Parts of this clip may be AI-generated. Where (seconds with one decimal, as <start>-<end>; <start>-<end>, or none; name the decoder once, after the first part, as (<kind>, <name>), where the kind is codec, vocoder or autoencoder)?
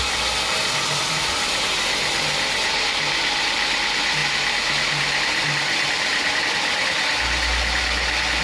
none